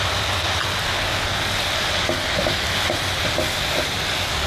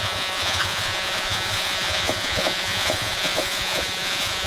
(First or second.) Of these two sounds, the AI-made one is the second